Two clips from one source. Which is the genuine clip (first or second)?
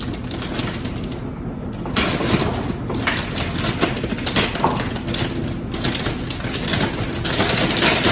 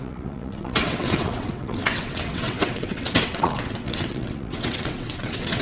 first